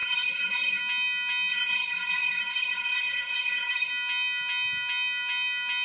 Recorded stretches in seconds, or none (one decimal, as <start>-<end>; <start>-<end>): 0.8-1.5; 3.9-5.8